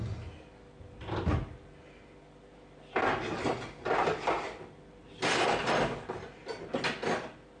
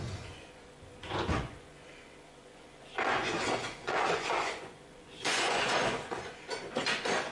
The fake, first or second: second